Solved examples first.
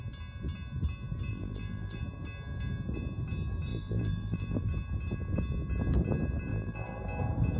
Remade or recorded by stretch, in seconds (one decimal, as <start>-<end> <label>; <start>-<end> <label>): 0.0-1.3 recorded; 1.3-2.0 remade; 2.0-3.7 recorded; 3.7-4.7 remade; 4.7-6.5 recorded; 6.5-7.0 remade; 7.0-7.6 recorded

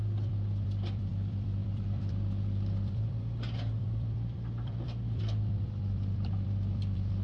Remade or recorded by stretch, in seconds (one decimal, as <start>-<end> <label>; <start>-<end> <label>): 0.0-7.2 remade

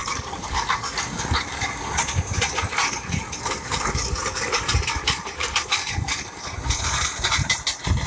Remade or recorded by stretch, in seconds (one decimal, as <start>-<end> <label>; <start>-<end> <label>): 0.0-1.7 remade; 1.7-2.7 recorded; 2.7-6.4 remade; 6.4-8.1 recorded

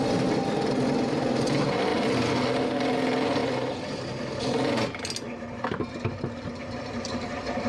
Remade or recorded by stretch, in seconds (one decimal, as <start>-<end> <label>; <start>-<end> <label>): 0.0-1.9 remade; 1.9-2.7 recorded; 2.7-3.4 remade; 3.4-6.6 recorded; 6.6-7.7 remade